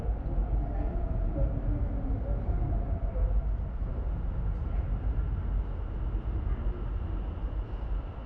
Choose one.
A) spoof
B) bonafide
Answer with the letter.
B